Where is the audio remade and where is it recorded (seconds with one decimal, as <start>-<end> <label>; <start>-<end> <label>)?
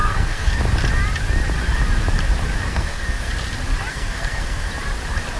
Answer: 0.0-0.6 remade; 0.6-2.7 recorded; 2.7-3.3 remade; 3.3-3.9 recorded; 3.9-4.7 remade; 4.7-5.4 recorded